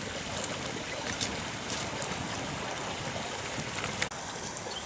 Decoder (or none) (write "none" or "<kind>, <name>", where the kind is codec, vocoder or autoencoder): none